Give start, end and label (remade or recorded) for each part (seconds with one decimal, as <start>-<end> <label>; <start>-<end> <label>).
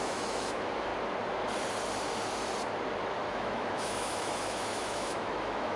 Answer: 0.0-0.9 remade; 0.9-3.3 recorded; 3.3-5.8 remade